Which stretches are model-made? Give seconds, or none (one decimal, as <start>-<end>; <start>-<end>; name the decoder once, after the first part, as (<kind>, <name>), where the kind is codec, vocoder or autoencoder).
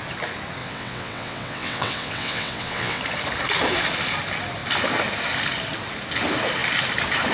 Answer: 0.6-3.0 (vocoder, WaveNeXt)